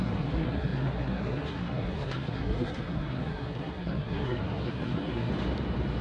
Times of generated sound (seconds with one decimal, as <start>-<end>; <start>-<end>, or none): 0.0-5.3